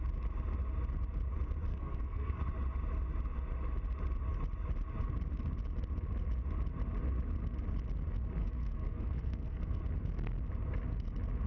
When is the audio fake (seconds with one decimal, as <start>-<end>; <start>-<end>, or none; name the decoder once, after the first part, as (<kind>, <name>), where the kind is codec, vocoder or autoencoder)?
1.7-2.4 (codec, SNAC); 8.4-9.8